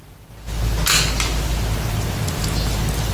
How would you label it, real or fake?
real